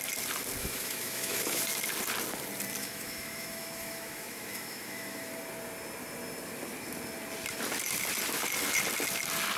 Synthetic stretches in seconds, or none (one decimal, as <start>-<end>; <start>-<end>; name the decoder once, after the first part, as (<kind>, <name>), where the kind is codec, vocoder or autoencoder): 0.6-1.6 (autoencoder, DAC-VAE); 2.8-5.3